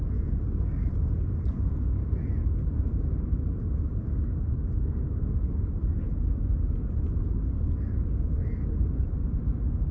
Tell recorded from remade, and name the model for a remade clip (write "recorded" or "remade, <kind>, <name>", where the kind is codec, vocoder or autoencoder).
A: recorded